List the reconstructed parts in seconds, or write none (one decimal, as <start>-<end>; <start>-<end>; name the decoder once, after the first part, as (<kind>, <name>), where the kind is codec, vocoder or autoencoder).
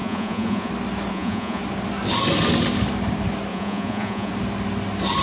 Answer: 0.0-0.7 (vocoder, Vocos); 1.1-1.6; 3.5-4.3